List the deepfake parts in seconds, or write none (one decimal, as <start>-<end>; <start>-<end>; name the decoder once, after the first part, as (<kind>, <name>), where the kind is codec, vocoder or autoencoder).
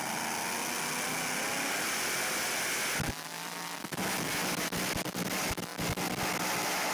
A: none